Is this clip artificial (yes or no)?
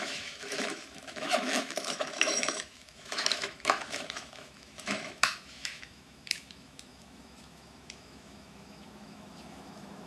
yes